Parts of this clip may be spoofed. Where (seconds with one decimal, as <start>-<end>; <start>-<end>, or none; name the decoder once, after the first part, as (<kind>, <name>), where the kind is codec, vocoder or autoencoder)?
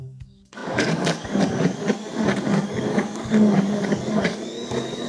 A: 0.0-5.1 (codec, DAC)